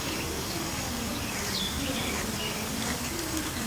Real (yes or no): no